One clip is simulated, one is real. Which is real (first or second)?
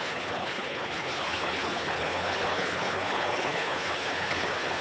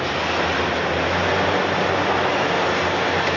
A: second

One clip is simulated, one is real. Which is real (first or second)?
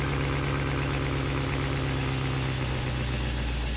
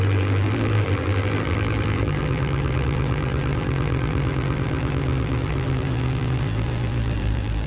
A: first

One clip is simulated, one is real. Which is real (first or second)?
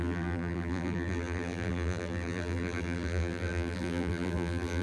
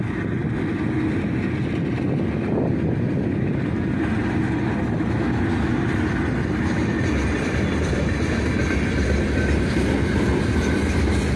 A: second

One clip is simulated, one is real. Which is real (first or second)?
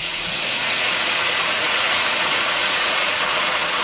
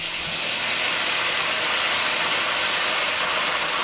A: second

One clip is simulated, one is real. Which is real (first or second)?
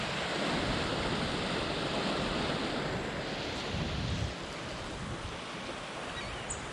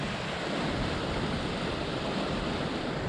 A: first